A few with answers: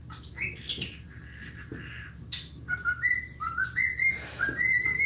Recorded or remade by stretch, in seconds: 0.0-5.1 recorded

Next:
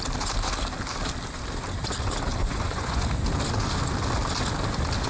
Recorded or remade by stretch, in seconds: 0.0-2.4 recorded; 2.4-3.1 remade; 3.1-5.1 recorded